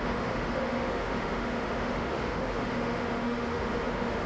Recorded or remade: remade